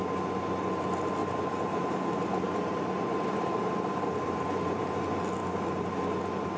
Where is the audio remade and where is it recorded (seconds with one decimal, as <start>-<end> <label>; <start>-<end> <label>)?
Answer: 0.0-1.2 recorded; 1.2-4.8 remade; 4.8-5.4 recorded; 5.4-6.0 remade; 6.0-6.6 recorded